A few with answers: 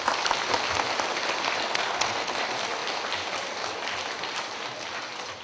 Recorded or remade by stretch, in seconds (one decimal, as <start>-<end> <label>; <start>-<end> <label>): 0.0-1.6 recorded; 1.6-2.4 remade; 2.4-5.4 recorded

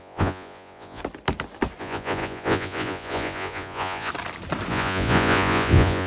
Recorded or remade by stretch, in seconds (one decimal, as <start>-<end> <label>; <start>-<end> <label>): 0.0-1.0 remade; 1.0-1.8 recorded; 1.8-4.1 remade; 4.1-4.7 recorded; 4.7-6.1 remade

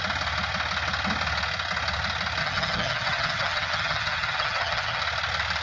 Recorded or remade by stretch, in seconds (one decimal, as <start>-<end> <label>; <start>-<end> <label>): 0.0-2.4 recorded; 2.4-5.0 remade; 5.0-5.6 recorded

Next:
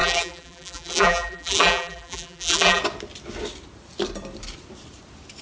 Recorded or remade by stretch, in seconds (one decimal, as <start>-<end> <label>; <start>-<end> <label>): 0.0-2.8 remade; 2.8-5.4 recorded

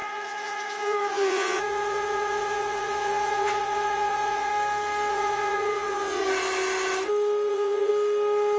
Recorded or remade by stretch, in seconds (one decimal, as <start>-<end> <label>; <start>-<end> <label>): 0.0-4.5 remade; 4.5-5.1 recorded; 5.1-6.2 remade; 6.2-7.5 recorded; 7.5-7.9 remade; 7.9-8.6 recorded